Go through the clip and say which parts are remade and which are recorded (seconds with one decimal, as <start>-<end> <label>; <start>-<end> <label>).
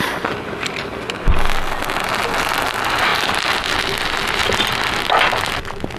0.0-3.1 recorded; 3.1-3.7 remade; 3.7-6.0 recorded